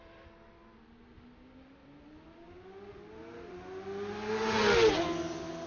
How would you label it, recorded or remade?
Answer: recorded